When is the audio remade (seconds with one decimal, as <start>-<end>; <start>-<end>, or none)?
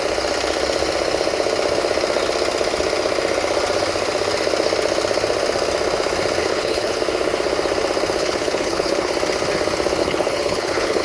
6.4-7.0; 8.2-9.1; 10.0-11.0